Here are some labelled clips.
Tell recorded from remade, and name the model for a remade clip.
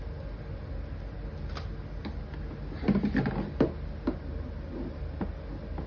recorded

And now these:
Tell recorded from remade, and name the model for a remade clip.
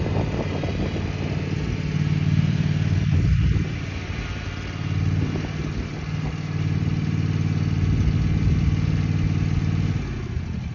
recorded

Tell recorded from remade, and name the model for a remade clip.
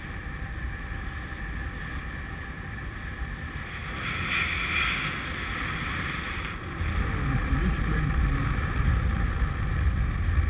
recorded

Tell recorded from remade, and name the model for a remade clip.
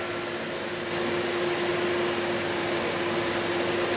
recorded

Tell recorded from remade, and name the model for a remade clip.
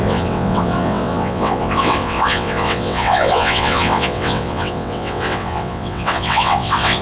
remade, vocoder, WaveNeXt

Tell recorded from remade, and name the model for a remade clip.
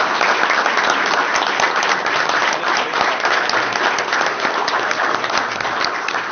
recorded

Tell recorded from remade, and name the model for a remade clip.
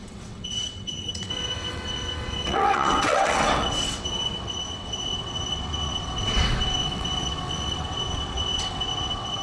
remade, vocoder, WaveNeXt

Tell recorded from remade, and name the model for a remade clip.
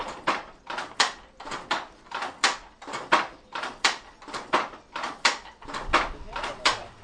recorded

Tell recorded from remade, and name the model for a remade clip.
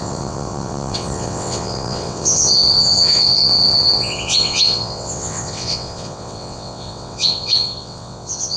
remade, vocoder, WaveNeXt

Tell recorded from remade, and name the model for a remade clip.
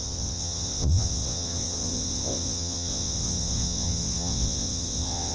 remade, vocoder, WaveNeXt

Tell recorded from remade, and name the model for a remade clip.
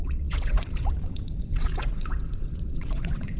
remade, vocoder, WaveNeXt